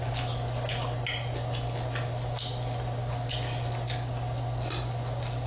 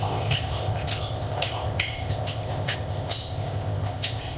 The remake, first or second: second